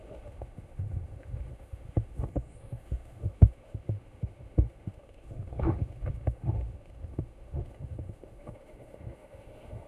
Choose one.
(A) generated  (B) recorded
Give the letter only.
A